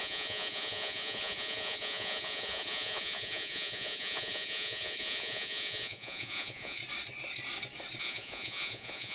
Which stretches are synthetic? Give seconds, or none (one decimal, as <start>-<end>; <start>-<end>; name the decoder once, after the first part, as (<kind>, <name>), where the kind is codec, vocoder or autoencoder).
0.0-6.8 (vocoder, Vocos); 8.0-9.1